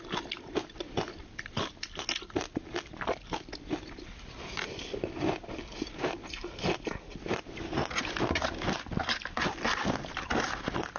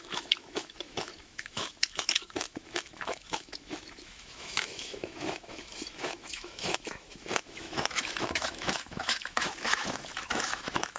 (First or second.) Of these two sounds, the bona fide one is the first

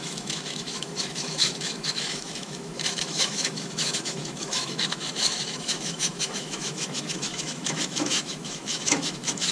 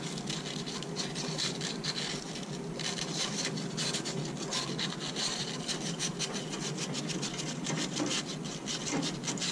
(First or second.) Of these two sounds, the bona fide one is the second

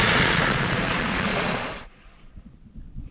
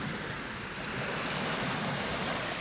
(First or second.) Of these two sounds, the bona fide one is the second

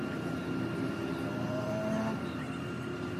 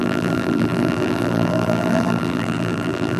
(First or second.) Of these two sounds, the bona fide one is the first